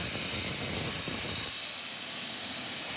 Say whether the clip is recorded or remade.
recorded